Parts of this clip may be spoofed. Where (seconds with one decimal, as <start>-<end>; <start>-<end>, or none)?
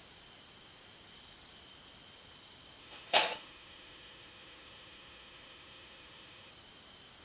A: 2.8-6.5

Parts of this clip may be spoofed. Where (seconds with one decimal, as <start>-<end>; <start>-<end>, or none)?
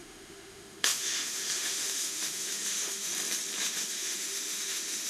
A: 0.0-3.1; 3.6-5.1